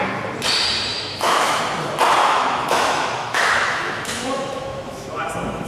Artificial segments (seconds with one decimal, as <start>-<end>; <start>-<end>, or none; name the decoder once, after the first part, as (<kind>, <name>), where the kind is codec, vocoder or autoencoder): 0.9-1.6 (autoencoder, DAC-VAE); 2.2-5.7